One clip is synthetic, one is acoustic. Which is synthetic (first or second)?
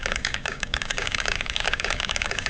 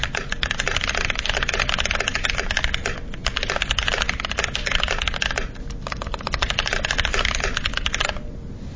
first